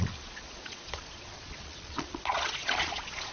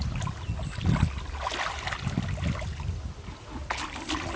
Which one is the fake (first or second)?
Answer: first